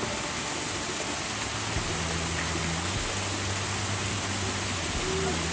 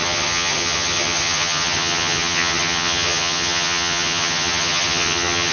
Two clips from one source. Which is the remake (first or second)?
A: second